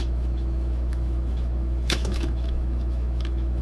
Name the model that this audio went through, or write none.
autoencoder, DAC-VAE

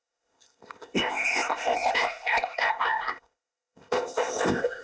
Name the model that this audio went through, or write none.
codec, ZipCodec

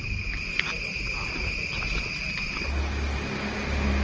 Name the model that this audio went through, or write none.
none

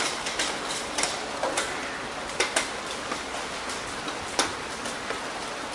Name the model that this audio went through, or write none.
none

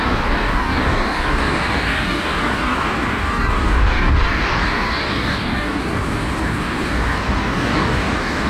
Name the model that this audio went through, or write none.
codec, DAC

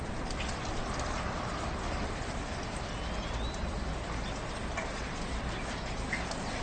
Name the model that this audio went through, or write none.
none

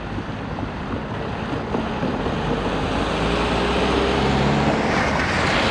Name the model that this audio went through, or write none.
none